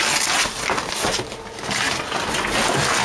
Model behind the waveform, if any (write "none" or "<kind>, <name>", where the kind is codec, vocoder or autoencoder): none